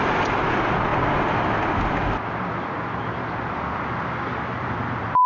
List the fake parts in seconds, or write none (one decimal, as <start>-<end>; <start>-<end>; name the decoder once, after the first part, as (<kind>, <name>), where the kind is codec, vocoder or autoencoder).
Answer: none